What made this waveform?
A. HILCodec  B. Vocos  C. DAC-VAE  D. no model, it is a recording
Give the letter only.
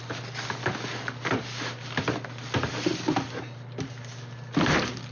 D